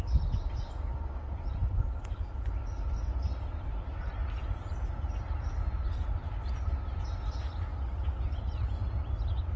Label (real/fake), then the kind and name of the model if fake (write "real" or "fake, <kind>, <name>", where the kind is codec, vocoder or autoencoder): real